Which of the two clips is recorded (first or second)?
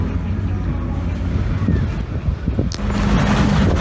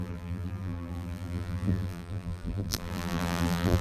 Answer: first